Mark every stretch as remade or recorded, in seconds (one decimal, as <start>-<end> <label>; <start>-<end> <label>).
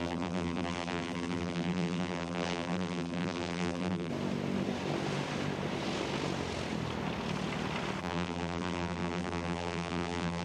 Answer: 0.0-4.1 remade; 4.1-8.0 recorded; 8.0-10.4 remade